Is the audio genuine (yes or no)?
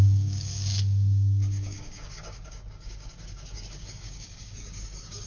no